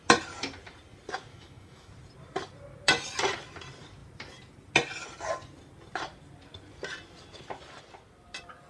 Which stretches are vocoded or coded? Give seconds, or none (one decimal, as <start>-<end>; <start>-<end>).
1.3-1.9